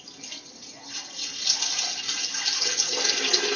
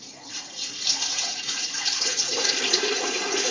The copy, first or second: second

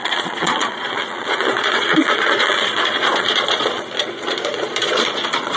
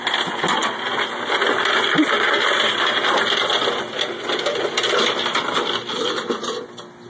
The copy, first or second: first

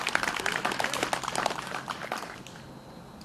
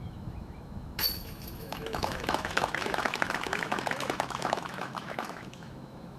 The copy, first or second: second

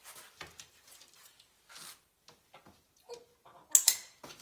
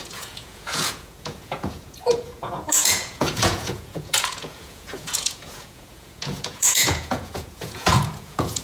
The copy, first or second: second